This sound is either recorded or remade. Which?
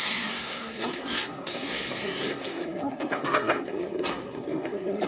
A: remade